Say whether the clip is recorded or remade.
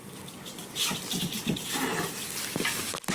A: recorded